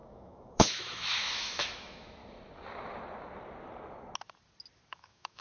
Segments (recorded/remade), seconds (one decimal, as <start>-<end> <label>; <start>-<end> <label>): 0.0-2.2 remade; 2.2-4.9 recorded; 4.9-5.4 remade